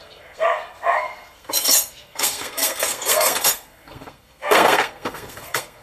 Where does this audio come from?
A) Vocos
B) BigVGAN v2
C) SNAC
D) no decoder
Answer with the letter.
C